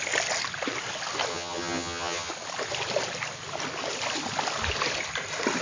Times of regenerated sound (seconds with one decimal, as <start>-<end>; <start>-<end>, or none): 1.3-2.3